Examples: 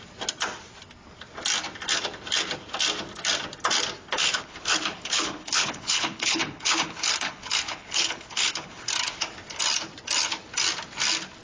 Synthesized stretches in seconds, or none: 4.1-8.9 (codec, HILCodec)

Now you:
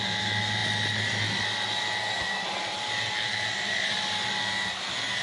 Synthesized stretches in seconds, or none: none

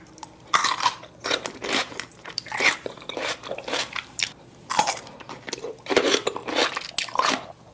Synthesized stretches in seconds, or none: 0.0-0.6 (vocoder, BigVGAN v2); 1.2-4.7; 5.6-6.4

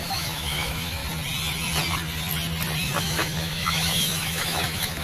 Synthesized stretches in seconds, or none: 0.0-1.0 (autoencoder, DAC-VAE); 3.0-5.0

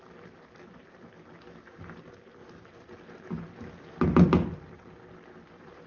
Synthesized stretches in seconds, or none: none

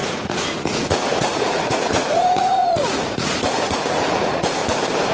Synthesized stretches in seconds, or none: 0.0-4.6 (vocoder, Vocos)